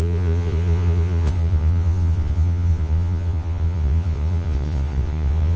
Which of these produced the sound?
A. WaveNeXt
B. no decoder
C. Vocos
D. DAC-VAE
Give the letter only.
C